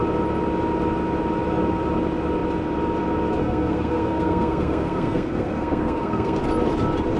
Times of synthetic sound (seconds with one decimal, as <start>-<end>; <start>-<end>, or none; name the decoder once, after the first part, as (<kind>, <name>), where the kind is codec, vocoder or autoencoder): 3.4-6.4 (codec, SNAC)